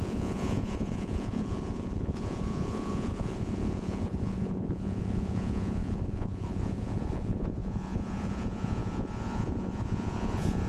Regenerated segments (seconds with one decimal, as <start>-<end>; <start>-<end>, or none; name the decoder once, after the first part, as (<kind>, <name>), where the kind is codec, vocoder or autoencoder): 0.0-10.7 (vocoder, Vocos)